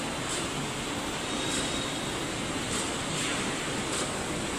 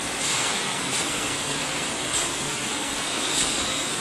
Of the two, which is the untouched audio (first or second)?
first